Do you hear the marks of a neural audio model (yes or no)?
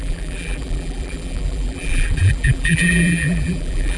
yes